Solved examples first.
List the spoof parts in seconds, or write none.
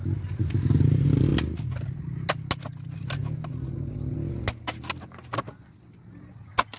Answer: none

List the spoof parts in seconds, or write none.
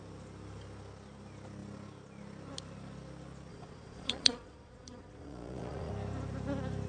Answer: 3.5-5.9 (vocoder, Vocos)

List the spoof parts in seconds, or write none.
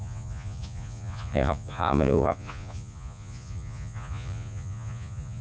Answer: 0.0-5.4 (vocoder, Vocos)